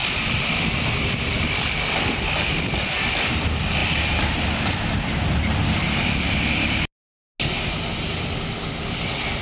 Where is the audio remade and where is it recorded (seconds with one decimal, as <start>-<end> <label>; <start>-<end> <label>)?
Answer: 0.0-0.7 remade; 0.7-3.8 recorded; 3.8-5.1 remade; 5.1-9.4 recorded